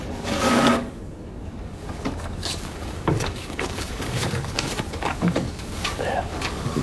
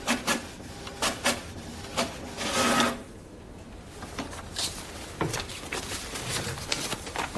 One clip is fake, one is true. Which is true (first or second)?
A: second